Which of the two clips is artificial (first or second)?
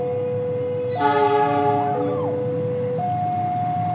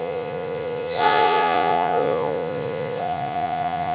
second